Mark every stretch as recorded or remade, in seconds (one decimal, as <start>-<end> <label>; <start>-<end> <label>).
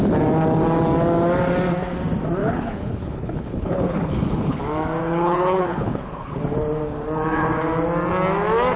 0.0-2.4 recorded; 2.4-4.6 remade; 4.6-5.0 recorded; 5.0-6.4 remade; 6.4-8.8 recorded